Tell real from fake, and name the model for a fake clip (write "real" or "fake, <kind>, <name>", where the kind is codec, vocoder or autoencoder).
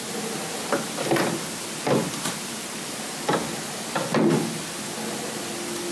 real